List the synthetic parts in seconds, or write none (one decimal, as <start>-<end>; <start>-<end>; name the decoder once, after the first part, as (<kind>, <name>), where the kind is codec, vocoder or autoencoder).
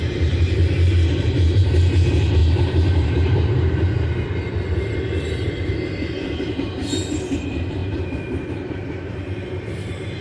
0.0-0.6 (vocoder, BigVGAN v2); 1.2-10.2